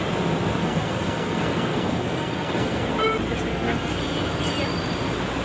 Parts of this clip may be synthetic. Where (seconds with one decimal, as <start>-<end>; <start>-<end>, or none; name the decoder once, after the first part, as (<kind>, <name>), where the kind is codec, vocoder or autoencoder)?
0.6-2.9 (codec, SNAC); 3.5-4.0